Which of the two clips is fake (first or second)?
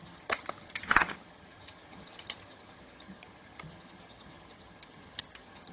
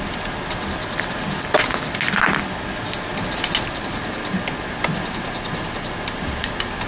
first